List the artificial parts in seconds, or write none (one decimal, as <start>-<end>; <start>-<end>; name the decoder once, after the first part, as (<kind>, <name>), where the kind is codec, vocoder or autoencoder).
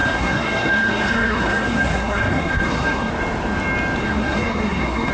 0.0-3.1 (codec, SNAC); 4.0-5.1